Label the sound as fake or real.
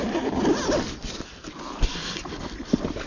real